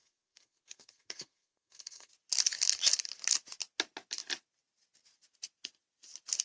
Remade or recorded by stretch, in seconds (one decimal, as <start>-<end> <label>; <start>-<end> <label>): 0.0-2.1 remade; 2.1-6.4 recorded